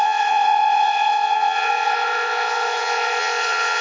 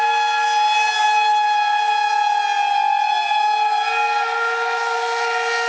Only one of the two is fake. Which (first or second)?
first